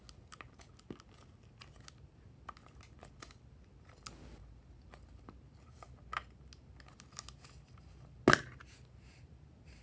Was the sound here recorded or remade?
recorded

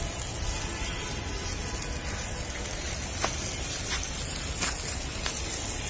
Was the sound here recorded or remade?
recorded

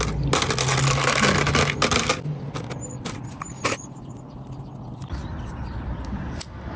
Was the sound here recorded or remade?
recorded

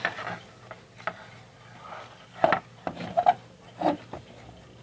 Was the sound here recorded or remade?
recorded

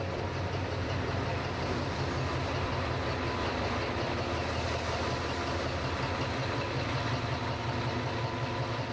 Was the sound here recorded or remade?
recorded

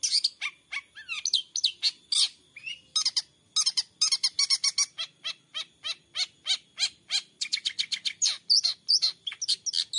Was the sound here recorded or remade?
recorded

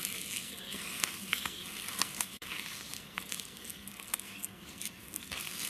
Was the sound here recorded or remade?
remade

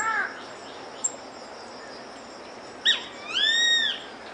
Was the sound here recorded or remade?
recorded